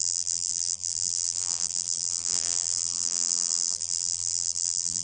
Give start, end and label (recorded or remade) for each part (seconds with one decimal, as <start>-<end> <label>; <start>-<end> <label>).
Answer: 0.0-5.0 remade